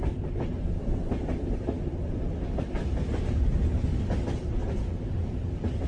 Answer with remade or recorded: recorded